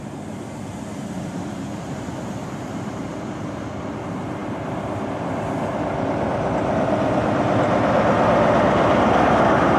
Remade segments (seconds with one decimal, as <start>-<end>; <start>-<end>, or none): none